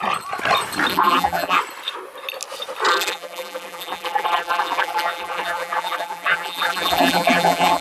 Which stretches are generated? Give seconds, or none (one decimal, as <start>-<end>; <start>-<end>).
0.9-1.6; 2.9-7.8